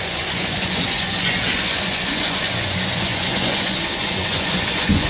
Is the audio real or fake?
fake